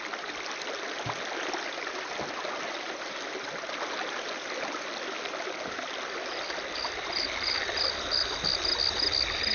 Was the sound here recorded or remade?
recorded